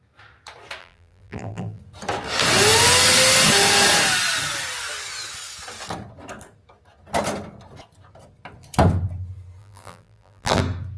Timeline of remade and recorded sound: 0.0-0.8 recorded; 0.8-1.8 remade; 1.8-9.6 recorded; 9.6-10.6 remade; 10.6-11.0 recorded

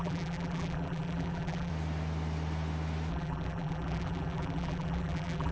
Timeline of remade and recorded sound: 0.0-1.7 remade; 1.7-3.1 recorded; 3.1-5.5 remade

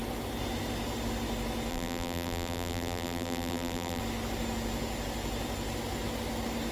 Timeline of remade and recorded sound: 0.0-1.7 recorded; 1.7-4.0 remade; 4.0-6.7 recorded

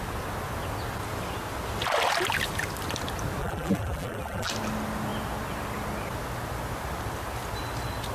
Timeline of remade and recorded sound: 0.0-3.4 recorded; 3.4-4.5 remade; 4.5-8.1 recorded

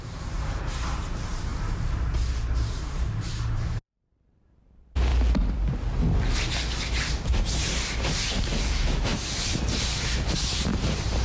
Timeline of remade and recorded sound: 0.0-5.1 remade; 5.1-7.3 recorded; 7.3-9.1 remade; 9.1-10.0 recorded; 10.0-11.2 remade

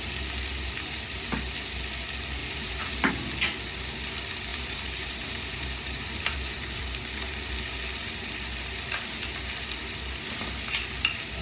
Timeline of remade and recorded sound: 0.0-2.4 recorded; 2.4-3.1 remade; 3.1-4.5 recorded; 4.5-6.8 remade; 6.8-11.4 recorded

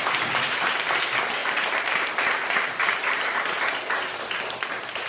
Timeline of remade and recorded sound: 0.0-0.7 remade; 0.7-1.4 recorded; 1.4-3.6 remade; 3.6-5.1 recorded